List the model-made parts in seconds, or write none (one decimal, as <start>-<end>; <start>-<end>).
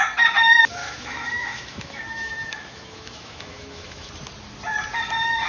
0.8-4.1